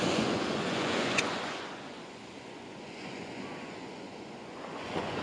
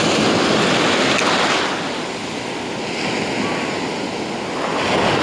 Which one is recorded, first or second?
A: second